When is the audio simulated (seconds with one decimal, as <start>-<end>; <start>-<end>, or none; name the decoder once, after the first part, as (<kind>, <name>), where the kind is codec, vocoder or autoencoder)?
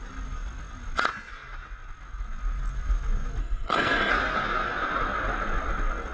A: 3.4-4.1 (codec, SNAC)